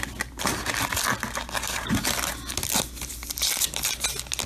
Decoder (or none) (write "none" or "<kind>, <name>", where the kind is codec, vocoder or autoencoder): none